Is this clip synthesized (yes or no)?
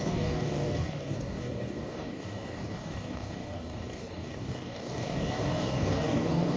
yes